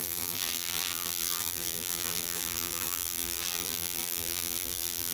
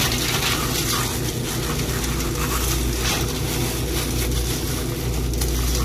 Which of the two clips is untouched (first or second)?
second